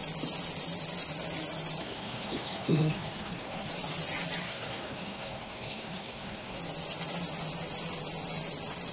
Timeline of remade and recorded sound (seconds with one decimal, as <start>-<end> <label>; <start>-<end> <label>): 0.0-1.8 recorded; 1.8-3.7 remade; 3.7-4.4 recorded; 4.4-6.6 remade; 6.6-8.9 recorded